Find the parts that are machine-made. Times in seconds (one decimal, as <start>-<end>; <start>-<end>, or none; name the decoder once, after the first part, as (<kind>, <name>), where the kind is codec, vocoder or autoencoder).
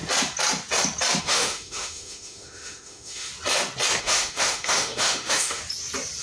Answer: 1.2-3.3 (autoencoder, DAC-VAE); 4.0-5.6